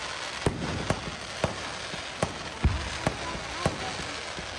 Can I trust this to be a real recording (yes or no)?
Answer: yes